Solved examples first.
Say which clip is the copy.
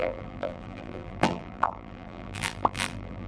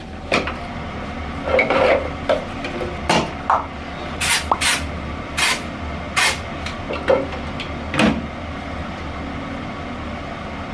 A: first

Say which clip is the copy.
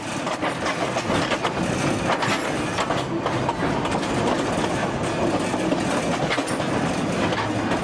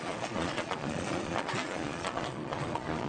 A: second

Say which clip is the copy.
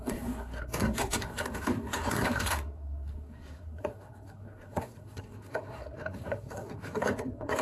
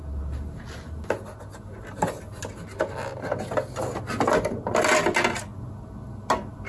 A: first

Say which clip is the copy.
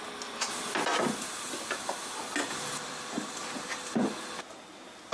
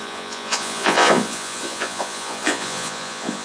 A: second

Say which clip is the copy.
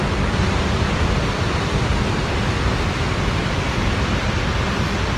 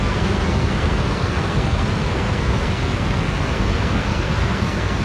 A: second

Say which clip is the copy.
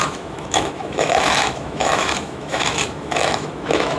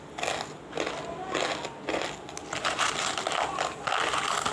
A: first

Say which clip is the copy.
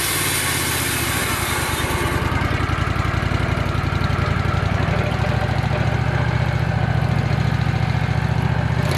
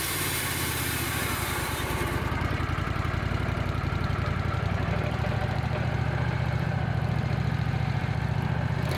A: second